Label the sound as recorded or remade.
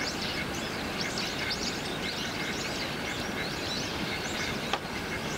recorded